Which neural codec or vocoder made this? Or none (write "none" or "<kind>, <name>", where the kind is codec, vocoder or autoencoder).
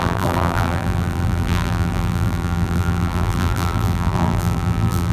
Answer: vocoder, BigVGAN v2